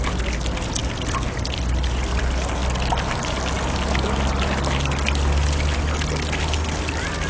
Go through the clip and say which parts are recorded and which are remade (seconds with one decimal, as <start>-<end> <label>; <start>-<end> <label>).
0.0-7.3 recorded